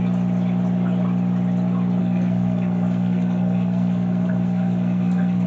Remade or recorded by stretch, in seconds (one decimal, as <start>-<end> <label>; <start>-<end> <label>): 0.0-2.0 recorded; 2.0-5.5 remade